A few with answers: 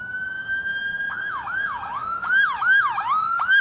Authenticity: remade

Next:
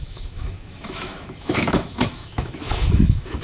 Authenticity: remade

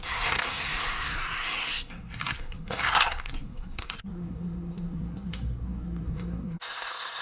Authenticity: remade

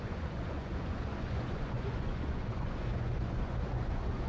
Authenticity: remade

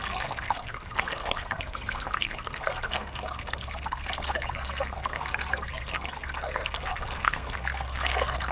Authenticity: remade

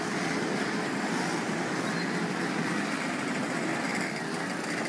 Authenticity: recorded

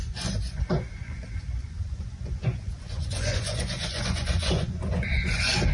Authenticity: remade